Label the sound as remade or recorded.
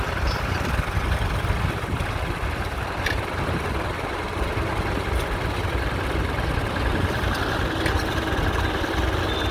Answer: recorded